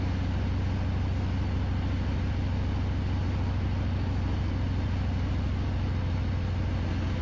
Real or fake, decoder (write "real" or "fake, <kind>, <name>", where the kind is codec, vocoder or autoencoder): real